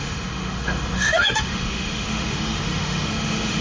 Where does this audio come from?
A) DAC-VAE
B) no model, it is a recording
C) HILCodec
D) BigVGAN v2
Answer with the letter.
A